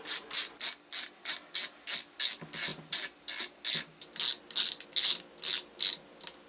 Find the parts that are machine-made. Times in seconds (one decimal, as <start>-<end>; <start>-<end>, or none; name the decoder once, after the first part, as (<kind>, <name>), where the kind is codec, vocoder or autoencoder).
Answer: none